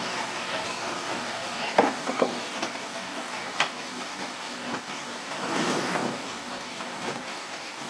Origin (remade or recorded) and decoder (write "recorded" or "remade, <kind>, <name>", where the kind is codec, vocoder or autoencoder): remade, codec, DAC